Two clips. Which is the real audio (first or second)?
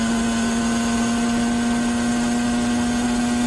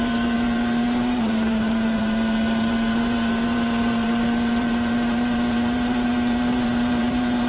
first